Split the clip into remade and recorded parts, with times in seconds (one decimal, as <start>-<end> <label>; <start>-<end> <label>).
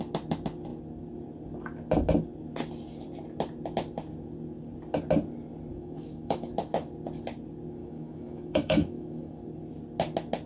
0.0-5.7 recorded; 5.7-6.5 remade; 6.5-7.8 recorded; 7.8-9.4 remade; 9.4-10.5 recorded